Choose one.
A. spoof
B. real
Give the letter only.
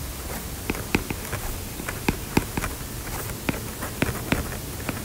B